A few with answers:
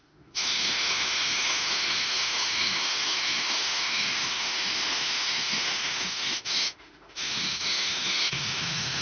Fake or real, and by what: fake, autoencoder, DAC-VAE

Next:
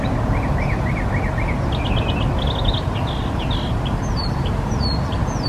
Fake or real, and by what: real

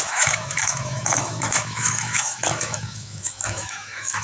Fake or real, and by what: fake, autoencoder, DAC-VAE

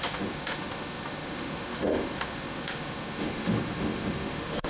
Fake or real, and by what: fake, autoencoder, DAC-VAE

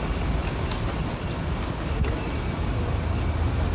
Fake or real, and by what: real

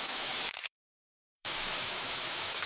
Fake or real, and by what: fake, autoencoder, DAC-VAE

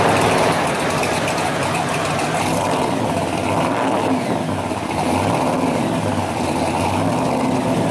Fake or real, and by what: real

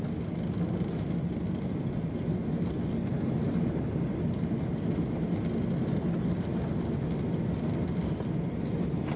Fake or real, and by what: real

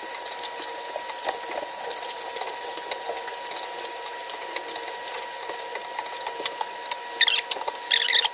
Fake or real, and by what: real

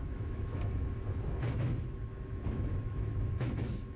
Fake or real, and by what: fake, autoencoder, DAC-VAE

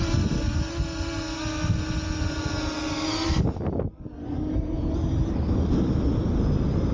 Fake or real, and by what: real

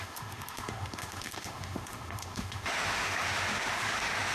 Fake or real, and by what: fake, autoencoder, DAC-VAE